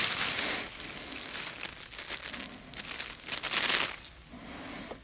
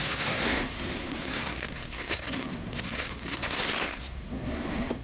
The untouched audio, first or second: first